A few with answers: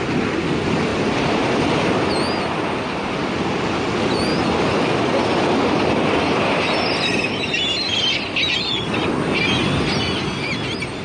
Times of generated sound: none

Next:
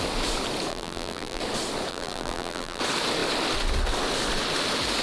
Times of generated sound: 0.7-1.4 (vocoder, BigVGAN v2); 1.9-2.8

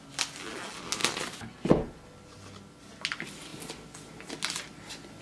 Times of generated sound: none

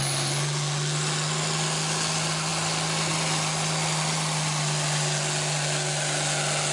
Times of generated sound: none